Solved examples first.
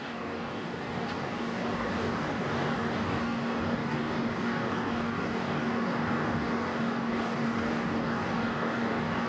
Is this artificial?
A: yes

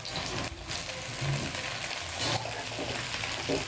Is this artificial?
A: no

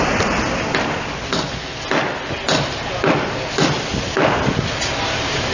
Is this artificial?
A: no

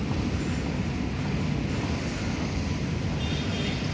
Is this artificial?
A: no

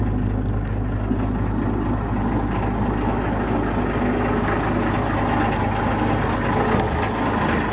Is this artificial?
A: no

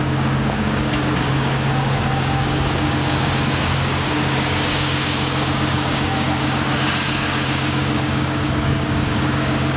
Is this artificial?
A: yes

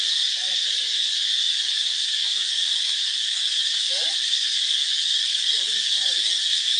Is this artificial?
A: yes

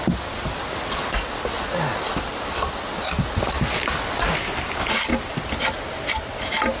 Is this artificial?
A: no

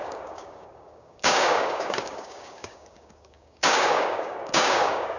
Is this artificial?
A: yes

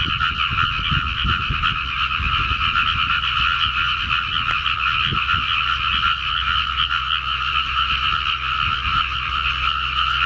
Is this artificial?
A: no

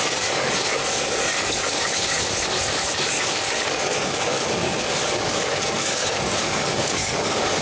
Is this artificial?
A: yes